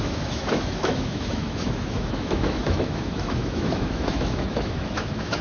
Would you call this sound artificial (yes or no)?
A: yes